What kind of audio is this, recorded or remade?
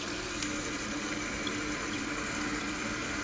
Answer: recorded